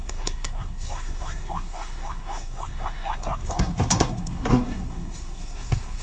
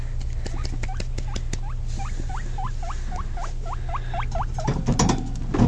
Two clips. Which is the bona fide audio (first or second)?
second